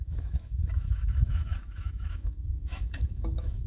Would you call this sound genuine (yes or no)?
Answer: no